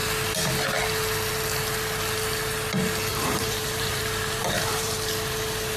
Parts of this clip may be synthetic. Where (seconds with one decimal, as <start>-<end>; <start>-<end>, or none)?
3.1-4.0; 4.4-4.9